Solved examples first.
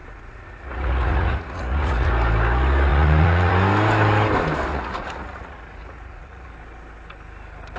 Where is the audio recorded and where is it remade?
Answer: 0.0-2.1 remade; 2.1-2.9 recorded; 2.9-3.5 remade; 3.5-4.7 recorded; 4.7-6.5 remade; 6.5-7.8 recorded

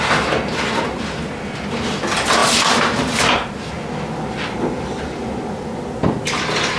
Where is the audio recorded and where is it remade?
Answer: 0.0-6.8 recorded